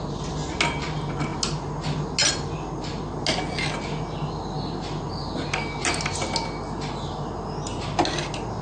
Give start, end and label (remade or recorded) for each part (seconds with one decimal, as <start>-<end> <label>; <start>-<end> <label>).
0.0-8.6 recorded